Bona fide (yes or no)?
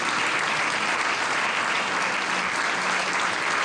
yes